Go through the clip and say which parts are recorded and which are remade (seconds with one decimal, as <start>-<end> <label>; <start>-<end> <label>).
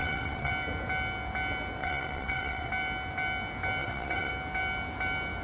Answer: 0.0-0.5 remade; 0.5-1.8 recorded; 1.8-2.7 remade; 2.7-3.8 recorded; 3.8-4.3 remade; 4.3-5.4 recorded